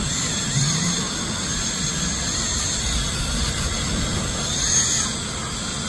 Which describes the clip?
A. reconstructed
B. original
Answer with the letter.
B